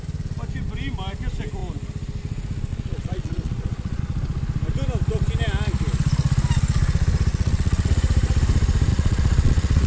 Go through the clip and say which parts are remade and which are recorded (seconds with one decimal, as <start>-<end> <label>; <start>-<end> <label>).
0.0-2.7 recorded; 2.7-4.0 remade; 4.0-7.3 recorded; 7.3-7.9 remade; 7.9-8.9 recorded; 8.9-9.9 remade